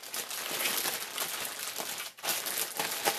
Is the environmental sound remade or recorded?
recorded